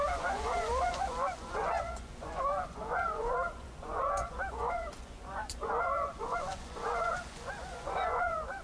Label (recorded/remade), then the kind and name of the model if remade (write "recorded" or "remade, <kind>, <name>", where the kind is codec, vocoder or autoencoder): remade, vocoder, Vocos